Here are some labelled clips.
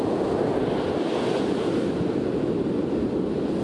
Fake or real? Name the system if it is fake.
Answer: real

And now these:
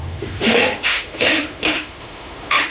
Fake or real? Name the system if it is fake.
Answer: fake, autoencoder, DAC-VAE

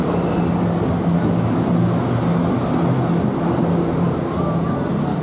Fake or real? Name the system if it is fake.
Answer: real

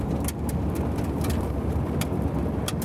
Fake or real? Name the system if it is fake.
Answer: fake, vocoder, BigVGAN v2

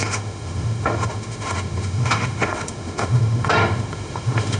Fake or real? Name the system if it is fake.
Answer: fake, autoencoder, DAC-VAE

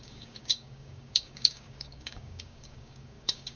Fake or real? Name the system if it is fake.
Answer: fake, codec, DAC